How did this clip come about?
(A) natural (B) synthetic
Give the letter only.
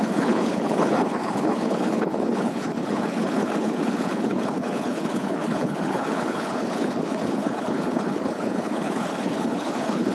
B